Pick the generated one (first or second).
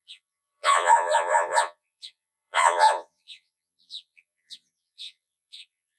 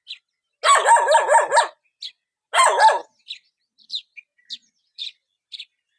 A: first